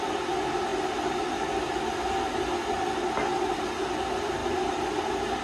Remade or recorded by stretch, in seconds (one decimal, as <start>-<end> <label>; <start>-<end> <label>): 0.0-5.4 recorded